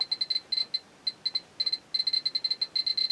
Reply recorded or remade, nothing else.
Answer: recorded